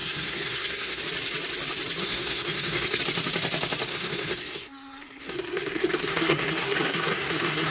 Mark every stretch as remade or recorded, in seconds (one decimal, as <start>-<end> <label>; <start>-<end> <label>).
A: 0.0-1.0 remade; 1.0-2.0 recorded; 2.0-3.0 remade; 3.0-3.9 recorded; 3.9-7.7 remade